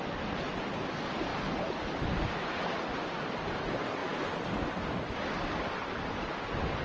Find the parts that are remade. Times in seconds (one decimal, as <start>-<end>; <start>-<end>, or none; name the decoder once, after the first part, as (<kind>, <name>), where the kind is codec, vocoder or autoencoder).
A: none